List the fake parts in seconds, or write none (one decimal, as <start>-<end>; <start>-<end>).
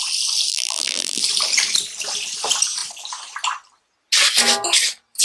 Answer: 0.5-1.2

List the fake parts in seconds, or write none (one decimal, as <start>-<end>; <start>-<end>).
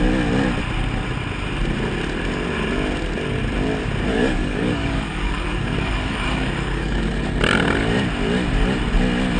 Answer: 4.1-7.0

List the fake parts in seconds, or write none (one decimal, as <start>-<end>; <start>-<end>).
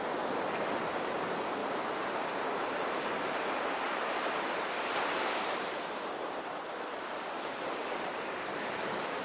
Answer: 1.6-5.8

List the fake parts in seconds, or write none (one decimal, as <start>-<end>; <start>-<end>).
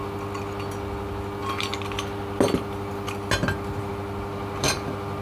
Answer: none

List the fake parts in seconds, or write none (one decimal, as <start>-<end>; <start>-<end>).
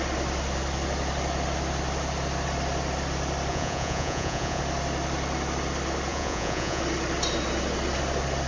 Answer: 3.5-4.6; 6.1-6.8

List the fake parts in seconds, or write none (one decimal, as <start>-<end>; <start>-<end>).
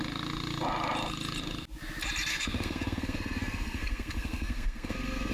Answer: 2.3-5.3